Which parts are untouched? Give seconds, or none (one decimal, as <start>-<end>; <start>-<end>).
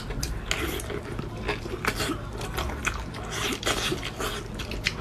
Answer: 0.0-5.0